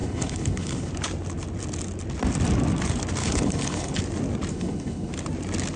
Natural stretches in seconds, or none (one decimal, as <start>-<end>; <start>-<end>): 0.9-3.2; 4.0-4.5; 5.1-5.8